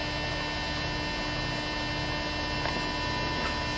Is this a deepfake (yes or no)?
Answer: no